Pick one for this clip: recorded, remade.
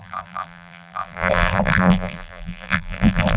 remade